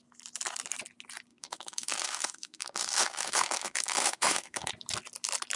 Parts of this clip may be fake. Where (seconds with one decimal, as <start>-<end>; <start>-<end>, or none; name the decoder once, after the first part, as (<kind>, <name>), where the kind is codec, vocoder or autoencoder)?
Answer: 1.3-4.7 (autoencoder, DAC-VAE)